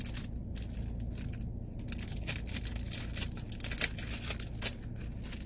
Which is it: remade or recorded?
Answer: recorded